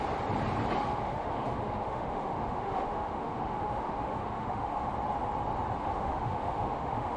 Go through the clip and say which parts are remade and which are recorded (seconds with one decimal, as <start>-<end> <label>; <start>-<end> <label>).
0.0-0.8 recorded; 0.8-4.9 remade; 4.9-5.8 recorded; 5.8-7.2 remade